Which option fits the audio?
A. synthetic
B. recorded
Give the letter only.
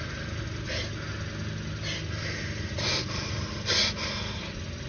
B